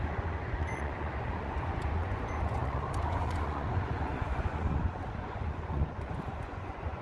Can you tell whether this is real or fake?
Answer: fake